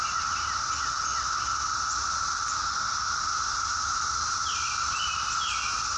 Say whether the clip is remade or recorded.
recorded